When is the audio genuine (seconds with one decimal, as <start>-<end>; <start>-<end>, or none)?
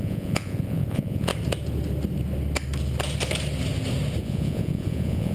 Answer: 1.3-4.2